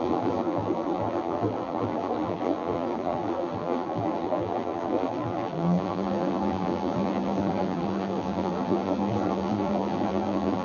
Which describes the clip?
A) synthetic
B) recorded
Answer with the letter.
A